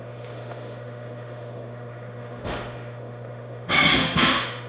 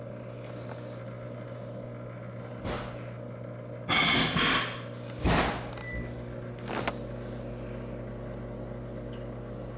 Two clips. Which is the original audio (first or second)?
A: second